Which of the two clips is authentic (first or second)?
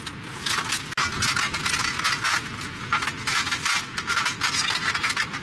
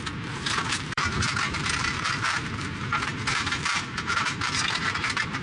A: first